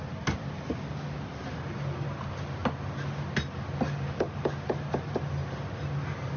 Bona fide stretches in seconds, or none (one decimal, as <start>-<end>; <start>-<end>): 0.0-6.4